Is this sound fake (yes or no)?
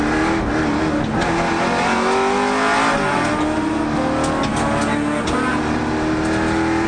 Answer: no